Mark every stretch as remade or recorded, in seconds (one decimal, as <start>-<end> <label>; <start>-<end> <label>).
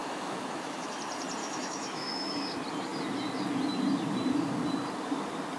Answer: 0.0-1.0 remade; 1.0-1.4 recorded; 1.4-2.4 remade; 2.4-5.6 recorded